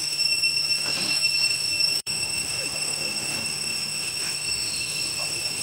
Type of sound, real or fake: fake